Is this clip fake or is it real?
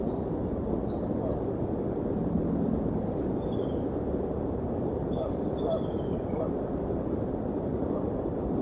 real